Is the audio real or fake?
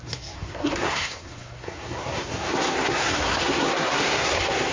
fake